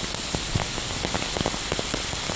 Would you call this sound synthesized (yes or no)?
no